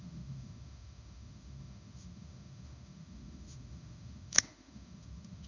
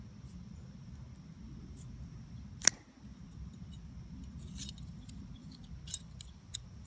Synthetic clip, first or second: first